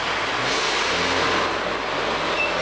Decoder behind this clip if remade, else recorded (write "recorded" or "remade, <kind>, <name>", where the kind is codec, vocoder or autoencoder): recorded